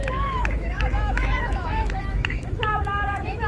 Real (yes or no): no